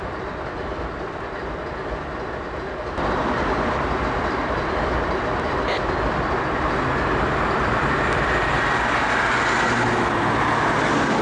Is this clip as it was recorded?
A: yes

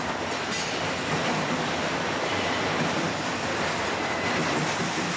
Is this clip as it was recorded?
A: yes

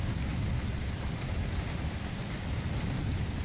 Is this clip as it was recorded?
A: yes